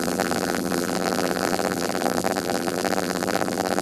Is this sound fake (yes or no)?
yes